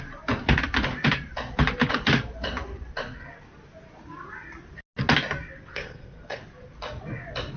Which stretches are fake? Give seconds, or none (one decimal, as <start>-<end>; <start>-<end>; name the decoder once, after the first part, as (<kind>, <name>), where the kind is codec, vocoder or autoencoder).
5.7-6.4 (codec, SNAC)